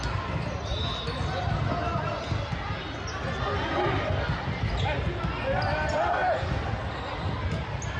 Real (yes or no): yes